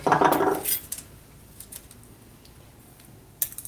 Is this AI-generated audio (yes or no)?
no